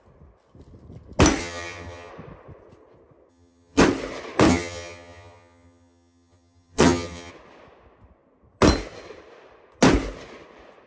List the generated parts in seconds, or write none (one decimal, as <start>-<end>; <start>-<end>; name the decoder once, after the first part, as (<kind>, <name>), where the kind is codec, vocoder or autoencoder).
1.4-2.1 (vocoder, HiFi-GAN); 3.3-3.8; 4.5-7.3